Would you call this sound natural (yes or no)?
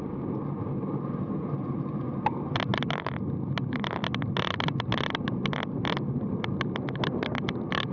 yes